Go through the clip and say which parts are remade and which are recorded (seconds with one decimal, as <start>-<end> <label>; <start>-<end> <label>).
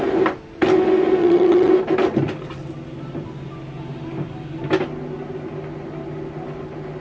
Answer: 0.0-1.2 recorded; 1.2-1.7 remade; 1.7-7.0 recorded